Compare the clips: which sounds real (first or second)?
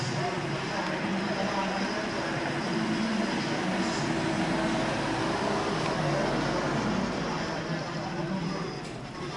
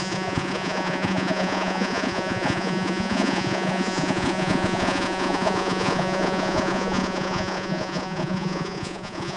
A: first